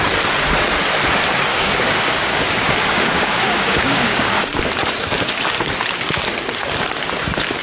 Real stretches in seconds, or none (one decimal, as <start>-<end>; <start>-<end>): 0.0-1.5; 4.6-7.6

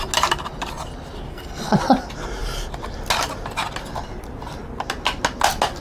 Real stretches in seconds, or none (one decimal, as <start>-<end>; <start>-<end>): 0.0-1.3; 1.8-5.8

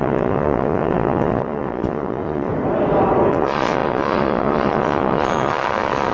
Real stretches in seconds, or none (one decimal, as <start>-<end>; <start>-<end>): 2.5-3.3

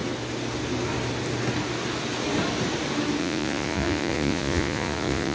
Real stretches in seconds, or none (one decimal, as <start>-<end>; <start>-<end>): 0.0-3.2

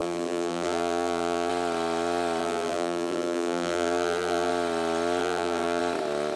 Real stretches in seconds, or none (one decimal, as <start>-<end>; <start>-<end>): 1.5-2.4; 4.5-5.2; 5.8-6.4

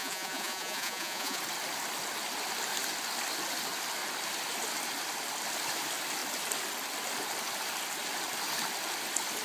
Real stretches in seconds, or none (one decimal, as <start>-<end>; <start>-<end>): 1.4-9.4